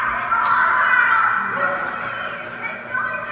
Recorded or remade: recorded